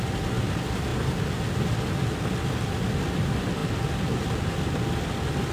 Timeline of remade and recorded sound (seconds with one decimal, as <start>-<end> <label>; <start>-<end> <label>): 0.0-5.5 recorded